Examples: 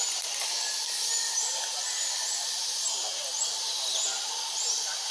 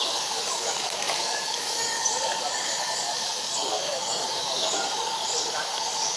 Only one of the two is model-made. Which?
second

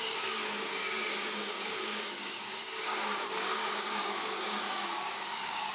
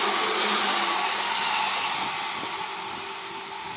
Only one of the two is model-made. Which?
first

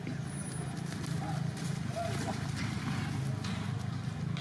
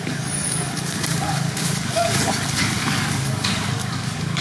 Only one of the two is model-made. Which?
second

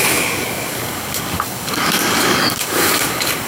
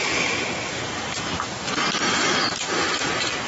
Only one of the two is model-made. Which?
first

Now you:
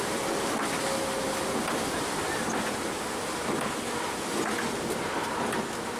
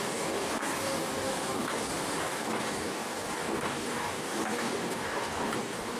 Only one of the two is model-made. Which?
second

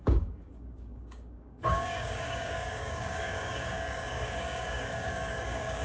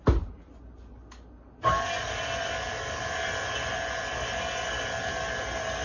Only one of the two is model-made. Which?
first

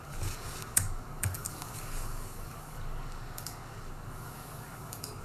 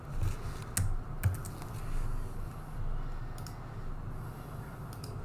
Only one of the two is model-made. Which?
first